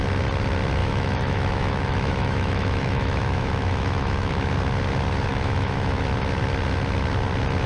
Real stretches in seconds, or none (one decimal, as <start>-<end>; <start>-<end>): 0.0-0.8; 4.5-5.3; 6.0-7.7